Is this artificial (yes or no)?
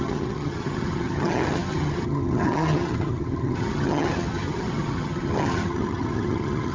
yes